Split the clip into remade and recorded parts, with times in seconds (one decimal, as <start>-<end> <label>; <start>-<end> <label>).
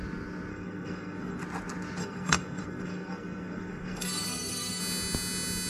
0.0-0.5 recorded; 0.5-1.4 remade; 1.4-2.0 recorded; 2.0-4.8 remade; 4.8-5.7 recorded